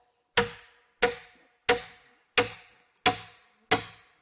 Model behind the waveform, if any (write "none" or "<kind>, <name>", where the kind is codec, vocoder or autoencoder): none